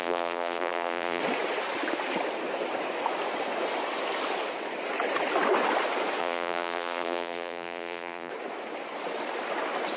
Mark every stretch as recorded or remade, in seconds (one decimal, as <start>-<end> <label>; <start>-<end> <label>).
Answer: 0.0-1.2 remade; 1.2-6.2 recorded; 6.2-8.3 remade; 8.3-10.0 recorded